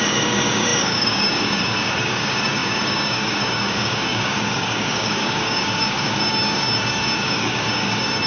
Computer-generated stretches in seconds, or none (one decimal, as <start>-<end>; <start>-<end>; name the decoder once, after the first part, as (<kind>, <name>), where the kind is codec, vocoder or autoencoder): 0.0-8.3 (codec, DAC)